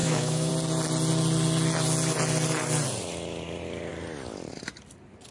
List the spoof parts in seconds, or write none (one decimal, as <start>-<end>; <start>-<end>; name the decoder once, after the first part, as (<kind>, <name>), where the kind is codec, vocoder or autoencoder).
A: 0.0-0.5 (autoencoder, DAC-VAE)